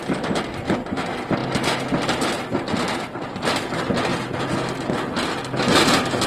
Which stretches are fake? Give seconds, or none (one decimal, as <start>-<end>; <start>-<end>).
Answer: 4.1-4.6